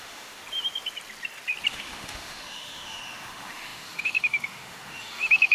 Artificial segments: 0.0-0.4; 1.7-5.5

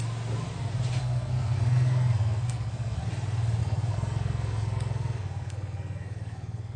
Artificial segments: 1.0-3.0; 3.6-6.8

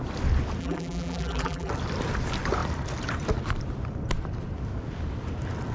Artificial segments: 0.6-1.7

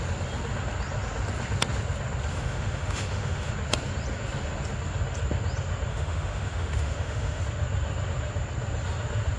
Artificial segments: 2.3-3.5; 5.9-7.4